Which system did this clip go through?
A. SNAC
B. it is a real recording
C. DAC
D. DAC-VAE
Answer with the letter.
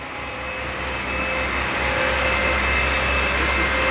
B